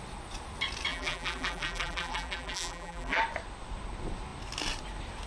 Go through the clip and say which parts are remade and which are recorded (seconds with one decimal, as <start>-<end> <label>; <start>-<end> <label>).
0.0-0.9 recorded; 0.9-3.2 remade; 3.2-5.3 recorded